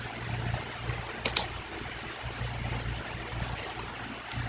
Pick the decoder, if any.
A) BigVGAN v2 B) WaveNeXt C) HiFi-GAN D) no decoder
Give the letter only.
D